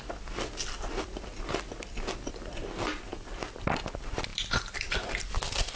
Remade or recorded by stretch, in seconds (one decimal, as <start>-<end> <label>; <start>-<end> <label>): 0.0-5.8 recorded